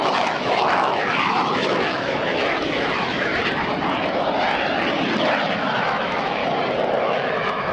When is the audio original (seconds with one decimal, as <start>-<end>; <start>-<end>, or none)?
3.3-5.5; 6.4-7.0